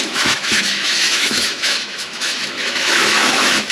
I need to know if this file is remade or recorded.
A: remade